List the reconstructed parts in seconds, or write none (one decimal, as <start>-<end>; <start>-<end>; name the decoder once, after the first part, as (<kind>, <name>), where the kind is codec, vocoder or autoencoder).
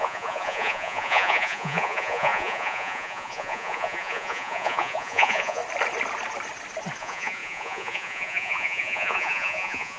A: 0.0-5.6 (vocoder, Vocos); 7.0-10.0